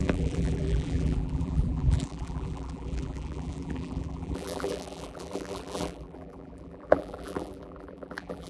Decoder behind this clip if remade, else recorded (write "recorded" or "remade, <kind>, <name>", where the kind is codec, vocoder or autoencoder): remade, vocoder, BigVGAN v2